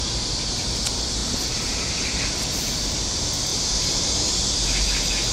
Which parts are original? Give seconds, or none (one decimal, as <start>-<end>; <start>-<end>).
0.0-3.5; 4.4-5.3